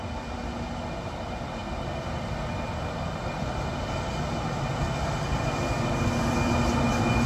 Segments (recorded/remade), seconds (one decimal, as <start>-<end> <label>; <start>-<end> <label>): 0.0-7.3 recorded